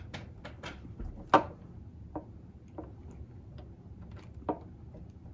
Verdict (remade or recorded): recorded